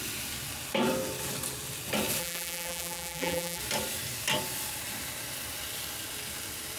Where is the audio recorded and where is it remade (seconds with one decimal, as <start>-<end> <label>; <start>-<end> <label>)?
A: 0.0-2.2 recorded; 2.2-3.6 remade; 3.6-6.8 recorded